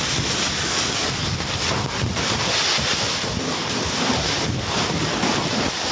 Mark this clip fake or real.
real